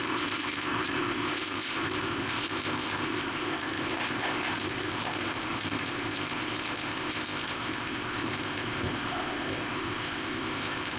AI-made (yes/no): yes